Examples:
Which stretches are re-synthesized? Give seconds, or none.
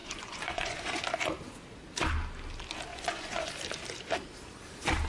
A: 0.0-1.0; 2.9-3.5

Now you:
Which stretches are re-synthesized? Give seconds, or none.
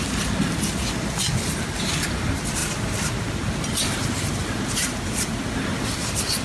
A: none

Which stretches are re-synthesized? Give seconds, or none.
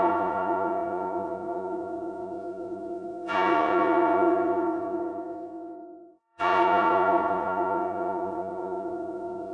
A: 0.0-9.5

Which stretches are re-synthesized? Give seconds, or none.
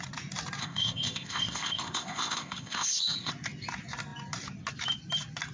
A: 0.6-3.3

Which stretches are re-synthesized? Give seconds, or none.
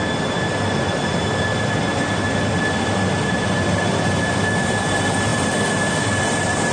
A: 1.9-2.4; 5.3-6.2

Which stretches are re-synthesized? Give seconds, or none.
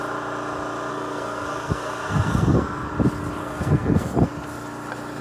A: 0.9-2.9; 3.4-4.3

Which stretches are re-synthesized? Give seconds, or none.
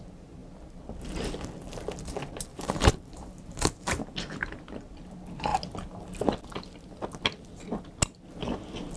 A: 2.5-4.6